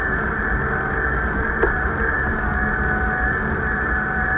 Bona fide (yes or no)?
yes